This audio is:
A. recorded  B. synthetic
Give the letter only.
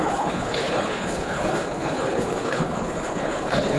B